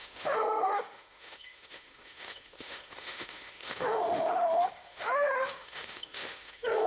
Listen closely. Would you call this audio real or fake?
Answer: fake